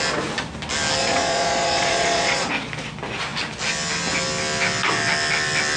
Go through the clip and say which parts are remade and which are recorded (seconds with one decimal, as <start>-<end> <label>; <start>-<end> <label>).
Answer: 0.0-1.0 recorded; 1.0-2.5 remade; 2.5-5.8 recorded